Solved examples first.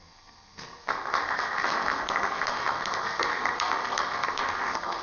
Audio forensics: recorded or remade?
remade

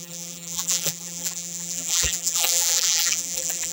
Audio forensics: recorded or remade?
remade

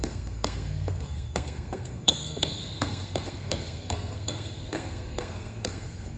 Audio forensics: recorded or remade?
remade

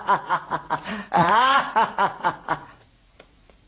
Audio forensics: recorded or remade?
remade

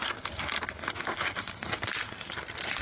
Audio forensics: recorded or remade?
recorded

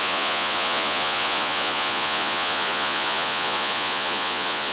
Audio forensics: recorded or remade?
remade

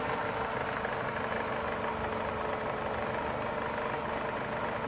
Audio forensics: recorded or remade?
recorded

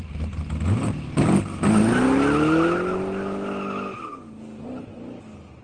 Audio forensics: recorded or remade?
recorded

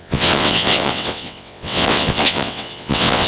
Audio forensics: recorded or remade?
remade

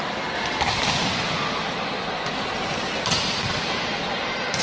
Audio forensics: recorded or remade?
recorded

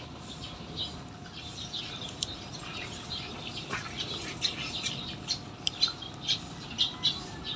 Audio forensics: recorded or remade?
recorded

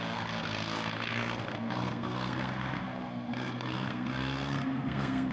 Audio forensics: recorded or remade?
remade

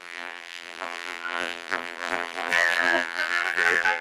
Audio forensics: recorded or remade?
remade